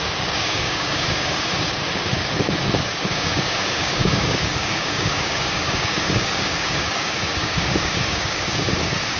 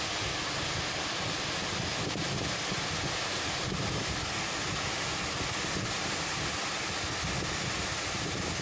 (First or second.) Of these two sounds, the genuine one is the second